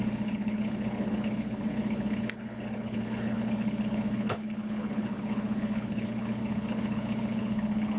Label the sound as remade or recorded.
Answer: remade